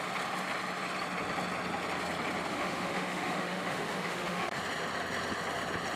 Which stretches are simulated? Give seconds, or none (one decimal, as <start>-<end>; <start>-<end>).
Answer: 2.5-4.6